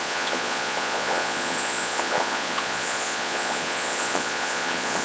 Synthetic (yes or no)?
yes